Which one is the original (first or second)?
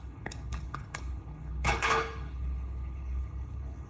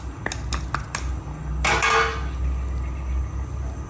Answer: second